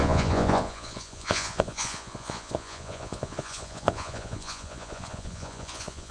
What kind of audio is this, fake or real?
fake